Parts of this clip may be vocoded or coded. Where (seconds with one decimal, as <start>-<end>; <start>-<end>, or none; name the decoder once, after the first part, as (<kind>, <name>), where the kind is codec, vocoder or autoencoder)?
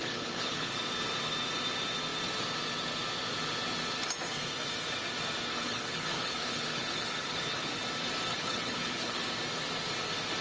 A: 0.0-0.8 (codec, HILCodec); 5.5-7.8; 8.3-9.2